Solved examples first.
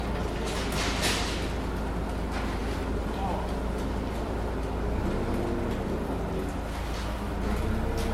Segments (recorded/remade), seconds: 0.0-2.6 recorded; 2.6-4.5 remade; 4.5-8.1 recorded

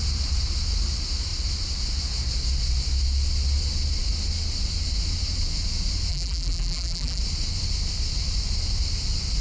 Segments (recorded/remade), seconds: 0.0-6.1 recorded; 6.1-7.2 remade; 7.2-9.4 recorded

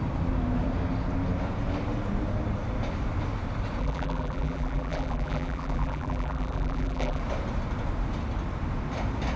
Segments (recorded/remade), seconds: 0.0-3.8 recorded; 3.8-7.2 remade; 7.2-9.4 recorded

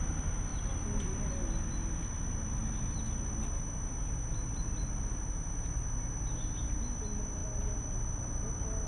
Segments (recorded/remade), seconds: 0.0-8.9 recorded